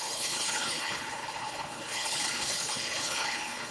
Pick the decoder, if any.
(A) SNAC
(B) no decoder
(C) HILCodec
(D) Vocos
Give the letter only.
C